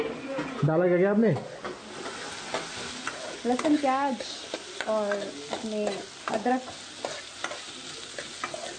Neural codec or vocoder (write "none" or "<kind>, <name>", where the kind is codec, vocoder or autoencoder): none